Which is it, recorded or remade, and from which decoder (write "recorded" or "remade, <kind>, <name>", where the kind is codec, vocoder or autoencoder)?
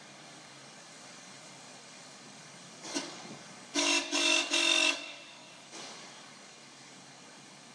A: remade, codec, DAC